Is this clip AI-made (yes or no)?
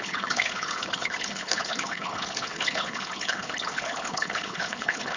yes